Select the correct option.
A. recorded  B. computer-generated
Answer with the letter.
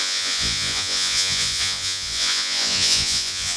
B